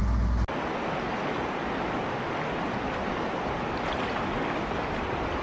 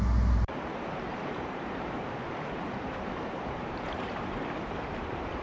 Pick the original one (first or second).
first